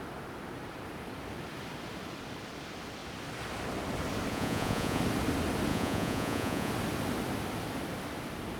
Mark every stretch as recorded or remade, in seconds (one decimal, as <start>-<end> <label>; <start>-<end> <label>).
0.0-4.3 recorded; 4.3-5.0 remade; 5.0-5.7 recorded; 5.7-6.7 remade; 6.7-8.6 recorded